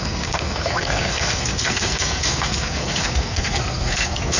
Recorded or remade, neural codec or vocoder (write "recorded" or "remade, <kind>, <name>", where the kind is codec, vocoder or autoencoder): remade, codec, SNAC